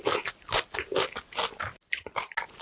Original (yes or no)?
yes